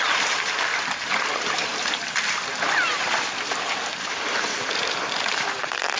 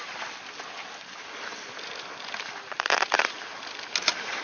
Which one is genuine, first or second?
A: second